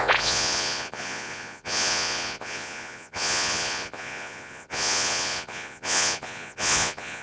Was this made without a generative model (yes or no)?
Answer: no